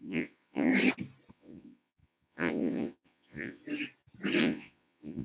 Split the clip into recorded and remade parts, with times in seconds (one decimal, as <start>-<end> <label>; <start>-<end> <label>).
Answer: 0.0-0.7 remade; 0.7-1.3 recorded; 1.3-3.6 remade; 3.6-4.4 recorded; 4.4-5.2 remade